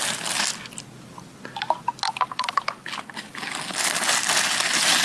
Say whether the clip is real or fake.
real